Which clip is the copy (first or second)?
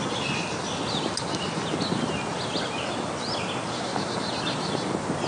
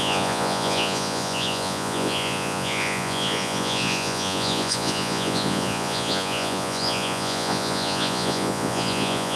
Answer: second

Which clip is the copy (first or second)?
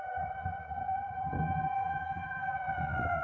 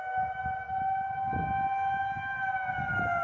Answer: first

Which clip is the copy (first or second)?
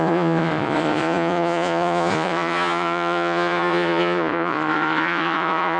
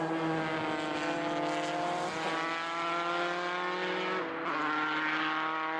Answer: first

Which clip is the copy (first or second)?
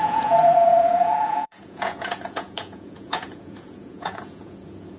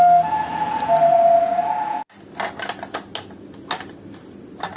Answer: first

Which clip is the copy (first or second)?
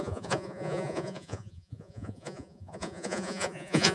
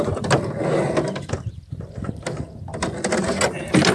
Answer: first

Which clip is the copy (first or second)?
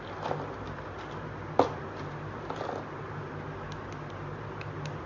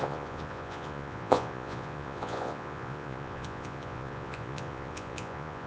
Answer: second